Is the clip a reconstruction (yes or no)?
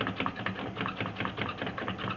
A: no